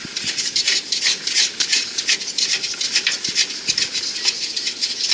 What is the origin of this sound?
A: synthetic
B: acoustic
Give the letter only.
B